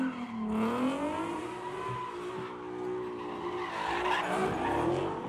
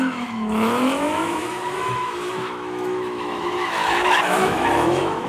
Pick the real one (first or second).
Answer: first